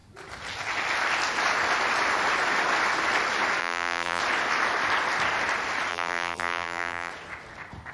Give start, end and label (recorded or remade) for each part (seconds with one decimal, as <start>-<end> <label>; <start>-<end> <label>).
0.0-3.6 recorded; 3.6-4.2 remade; 4.2-5.9 recorded; 5.9-7.1 remade; 7.1-7.9 recorded